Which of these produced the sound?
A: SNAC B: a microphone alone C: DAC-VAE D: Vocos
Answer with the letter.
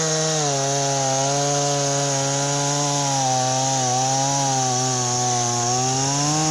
B